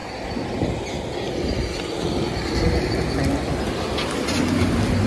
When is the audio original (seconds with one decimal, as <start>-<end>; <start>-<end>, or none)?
0.0-5.1